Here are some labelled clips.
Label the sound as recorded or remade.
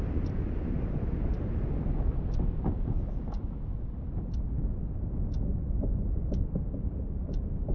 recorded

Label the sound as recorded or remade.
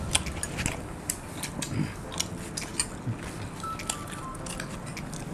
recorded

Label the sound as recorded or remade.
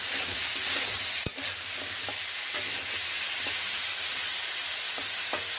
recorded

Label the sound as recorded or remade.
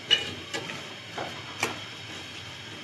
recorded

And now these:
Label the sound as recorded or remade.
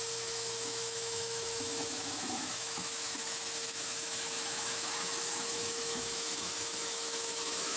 remade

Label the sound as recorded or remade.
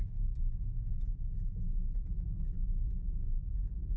recorded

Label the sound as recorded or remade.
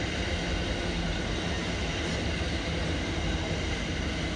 recorded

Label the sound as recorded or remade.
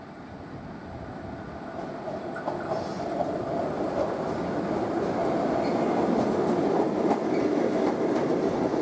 recorded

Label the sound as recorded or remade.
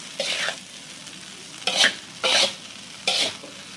recorded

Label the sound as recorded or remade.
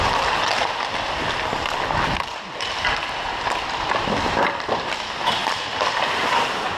recorded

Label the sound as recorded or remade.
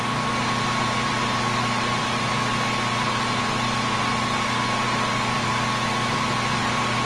recorded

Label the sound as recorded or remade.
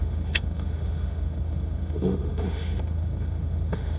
remade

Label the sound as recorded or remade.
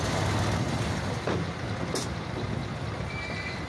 recorded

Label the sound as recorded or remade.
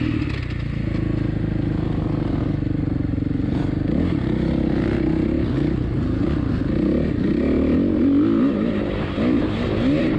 recorded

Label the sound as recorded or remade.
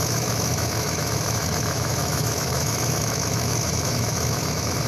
remade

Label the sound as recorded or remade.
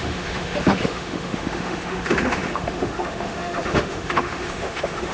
remade